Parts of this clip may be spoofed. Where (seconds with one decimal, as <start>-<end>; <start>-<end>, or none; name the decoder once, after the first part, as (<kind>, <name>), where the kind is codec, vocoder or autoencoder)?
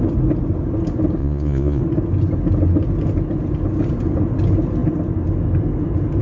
1.2-1.8 (vocoder, Vocos)